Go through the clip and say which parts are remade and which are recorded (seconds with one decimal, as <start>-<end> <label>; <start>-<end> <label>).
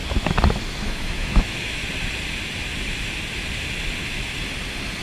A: 0.0-0.7 recorded; 0.7-1.8 remade; 1.8-5.0 recorded